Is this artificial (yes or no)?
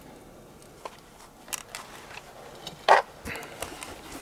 no